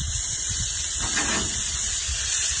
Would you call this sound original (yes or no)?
no